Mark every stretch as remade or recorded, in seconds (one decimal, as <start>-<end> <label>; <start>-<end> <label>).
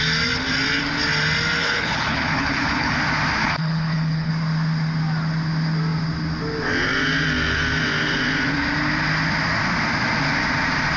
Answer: 0.0-1.6 recorded; 1.6-3.0 remade; 3.0-3.4 recorded; 3.4-4.3 remade; 4.3-11.0 recorded